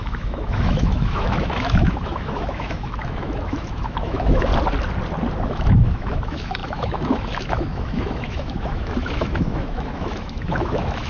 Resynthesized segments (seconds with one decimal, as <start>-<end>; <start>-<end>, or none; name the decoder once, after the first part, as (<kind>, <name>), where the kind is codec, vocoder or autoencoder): 0.0-4.5 (autoencoder, DAC-VAE); 5.5-11.1